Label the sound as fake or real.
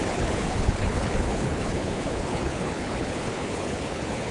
fake